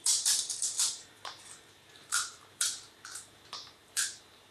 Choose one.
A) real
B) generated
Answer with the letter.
B